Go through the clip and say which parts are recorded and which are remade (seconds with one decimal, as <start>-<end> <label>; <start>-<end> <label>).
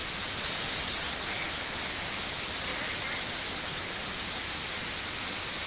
0.0-5.7 recorded